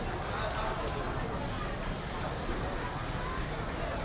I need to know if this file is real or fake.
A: real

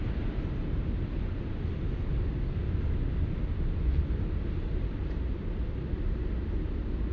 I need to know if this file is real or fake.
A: real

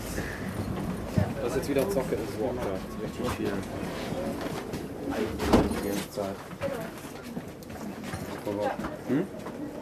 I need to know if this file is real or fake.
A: real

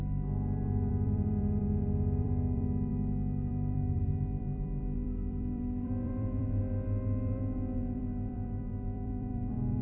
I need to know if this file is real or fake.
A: fake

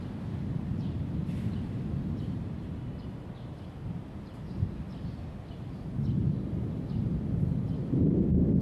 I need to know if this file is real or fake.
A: real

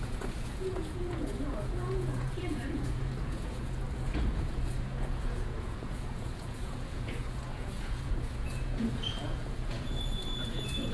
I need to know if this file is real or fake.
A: fake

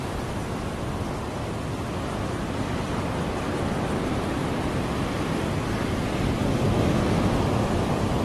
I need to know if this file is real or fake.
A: fake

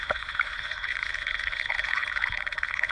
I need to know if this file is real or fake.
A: fake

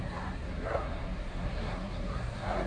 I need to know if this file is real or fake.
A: fake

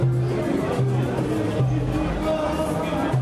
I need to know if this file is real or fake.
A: real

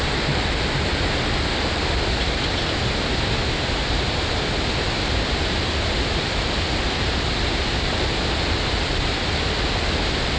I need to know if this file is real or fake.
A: real